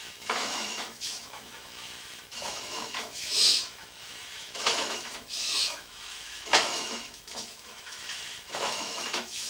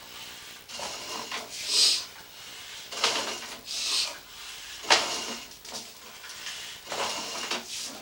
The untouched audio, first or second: second